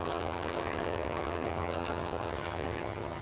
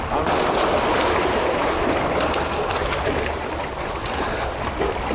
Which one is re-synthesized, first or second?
first